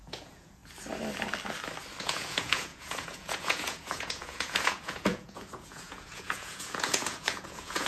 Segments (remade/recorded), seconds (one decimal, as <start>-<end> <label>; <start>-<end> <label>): 0.0-0.6 remade; 0.6-2.0 recorded; 2.0-7.9 remade